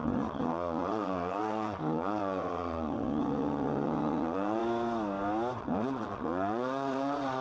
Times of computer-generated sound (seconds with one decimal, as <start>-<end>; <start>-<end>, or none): 0.0-4.6; 5.6-7.4